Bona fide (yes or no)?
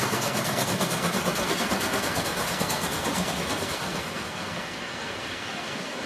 no